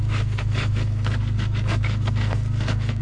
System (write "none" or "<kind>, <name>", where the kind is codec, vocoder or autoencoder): codec, SNAC